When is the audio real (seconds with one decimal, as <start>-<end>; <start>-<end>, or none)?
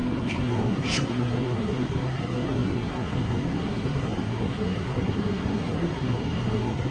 none